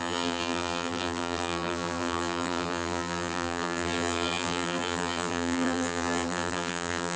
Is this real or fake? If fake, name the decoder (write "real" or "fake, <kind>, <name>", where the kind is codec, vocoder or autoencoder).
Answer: fake, vocoder, BigVGAN v2